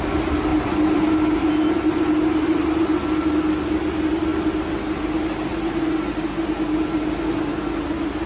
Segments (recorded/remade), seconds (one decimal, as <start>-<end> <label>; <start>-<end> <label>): 0.0-8.3 recorded